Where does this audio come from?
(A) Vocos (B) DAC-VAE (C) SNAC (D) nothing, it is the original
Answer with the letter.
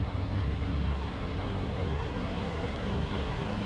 C